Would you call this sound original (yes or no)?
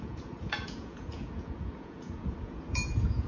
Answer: no